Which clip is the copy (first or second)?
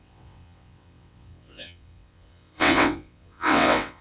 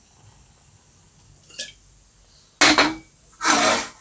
first